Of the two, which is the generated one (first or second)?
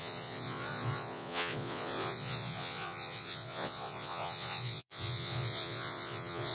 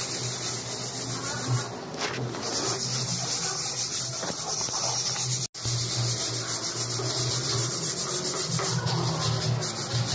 first